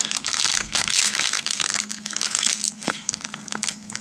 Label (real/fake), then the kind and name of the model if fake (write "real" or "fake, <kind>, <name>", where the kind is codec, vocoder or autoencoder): fake, codec, SNAC